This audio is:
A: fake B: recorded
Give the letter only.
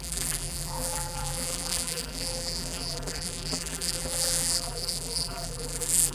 A